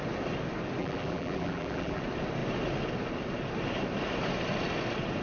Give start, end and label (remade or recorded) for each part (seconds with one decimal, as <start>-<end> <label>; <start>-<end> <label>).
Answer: 0.0-0.8 recorded; 0.8-2.0 remade; 2.0-5.2 recorded